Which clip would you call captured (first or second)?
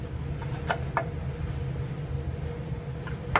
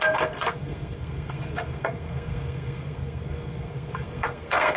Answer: first